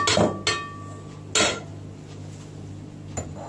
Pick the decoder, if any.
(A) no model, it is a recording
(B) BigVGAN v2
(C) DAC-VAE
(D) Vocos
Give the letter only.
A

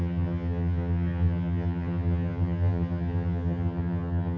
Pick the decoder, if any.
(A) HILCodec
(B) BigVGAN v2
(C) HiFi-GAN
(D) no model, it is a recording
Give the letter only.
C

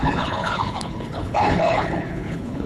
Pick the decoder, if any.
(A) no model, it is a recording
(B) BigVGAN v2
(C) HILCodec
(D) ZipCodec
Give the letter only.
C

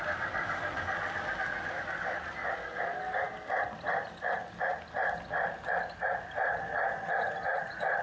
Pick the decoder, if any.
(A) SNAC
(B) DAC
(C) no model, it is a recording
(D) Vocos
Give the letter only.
C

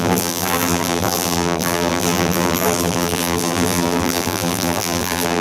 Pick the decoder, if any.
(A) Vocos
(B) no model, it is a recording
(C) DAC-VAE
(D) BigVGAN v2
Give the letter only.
D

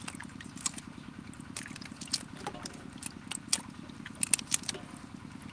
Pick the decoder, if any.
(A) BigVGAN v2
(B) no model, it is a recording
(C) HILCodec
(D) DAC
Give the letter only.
B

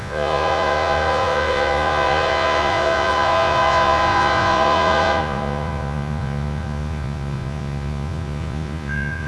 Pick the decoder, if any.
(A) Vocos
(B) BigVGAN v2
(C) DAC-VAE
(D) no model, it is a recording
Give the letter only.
A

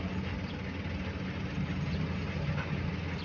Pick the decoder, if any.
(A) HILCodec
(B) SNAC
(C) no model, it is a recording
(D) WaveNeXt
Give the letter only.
C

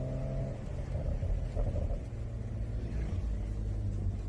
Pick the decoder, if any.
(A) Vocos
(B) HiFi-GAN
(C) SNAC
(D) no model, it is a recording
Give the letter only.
D